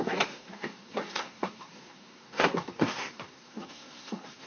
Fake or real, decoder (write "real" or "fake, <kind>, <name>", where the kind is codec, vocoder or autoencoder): fake, codec, SNAC